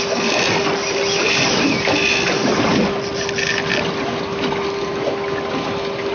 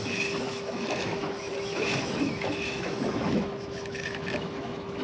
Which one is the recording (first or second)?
first